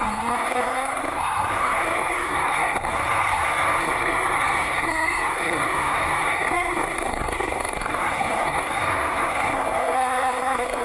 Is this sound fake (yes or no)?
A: yes